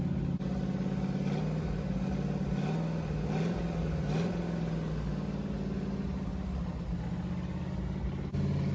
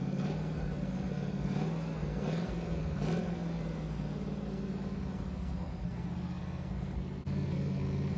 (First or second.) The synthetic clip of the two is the second